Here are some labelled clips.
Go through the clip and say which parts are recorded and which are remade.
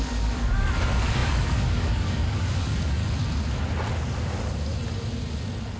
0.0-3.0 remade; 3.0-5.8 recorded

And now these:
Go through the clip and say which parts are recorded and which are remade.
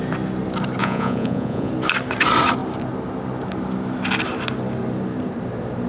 0.0-0.8 recorded; 0.8-1.7 remade; 1.7-5.9 recorded